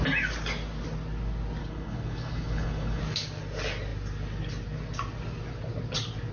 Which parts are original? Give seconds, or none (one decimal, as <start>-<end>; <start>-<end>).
0.0-1.6; 3.0-6.3